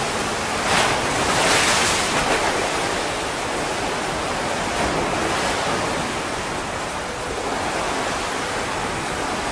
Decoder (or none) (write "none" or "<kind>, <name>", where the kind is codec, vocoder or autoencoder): none